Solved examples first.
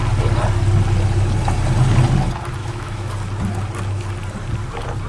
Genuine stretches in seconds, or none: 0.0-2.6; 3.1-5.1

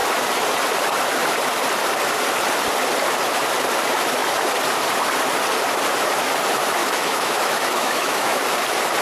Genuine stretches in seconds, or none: 0.0-6.8; 8.4-9.0

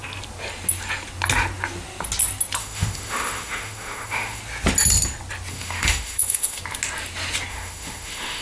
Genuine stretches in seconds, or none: 0.0-2.6; 4.4-5.5; 6.6-7.5

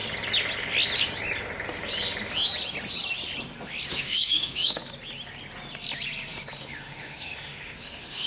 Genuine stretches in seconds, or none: 0.0-3.9; 4.8-6.6

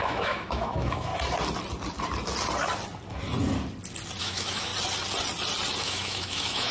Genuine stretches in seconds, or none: 1.1-4.2; 4.7-5.8

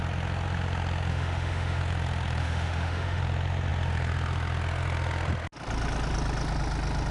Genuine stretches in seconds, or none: 0.0-1.1; 1.8-2.4; 3.2-7.1